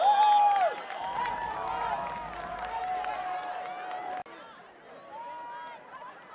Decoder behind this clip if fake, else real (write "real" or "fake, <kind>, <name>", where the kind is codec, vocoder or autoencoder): real